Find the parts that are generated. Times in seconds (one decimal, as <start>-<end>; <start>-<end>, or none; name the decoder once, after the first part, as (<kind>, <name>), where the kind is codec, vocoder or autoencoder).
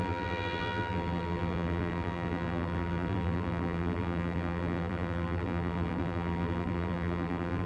0.0-7.7 (vocoder, BigVGAN v2)